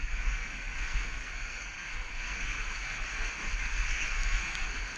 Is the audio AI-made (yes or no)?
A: yes